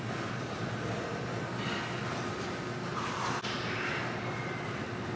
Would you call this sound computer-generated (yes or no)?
no